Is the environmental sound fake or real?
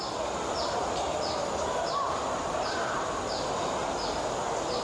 real